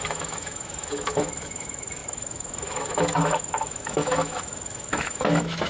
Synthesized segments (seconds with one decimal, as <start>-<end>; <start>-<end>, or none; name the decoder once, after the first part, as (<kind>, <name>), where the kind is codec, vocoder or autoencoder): 0.0-5.7 (autoencoder, DAC-VAE)